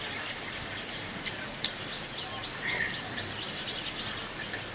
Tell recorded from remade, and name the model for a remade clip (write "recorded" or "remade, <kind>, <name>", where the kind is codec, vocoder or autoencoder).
recorded